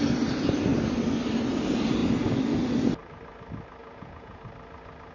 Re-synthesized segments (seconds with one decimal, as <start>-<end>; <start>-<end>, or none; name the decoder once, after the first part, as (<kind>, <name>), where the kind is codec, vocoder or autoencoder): 3.8-4.4 (vocoder, Vocos)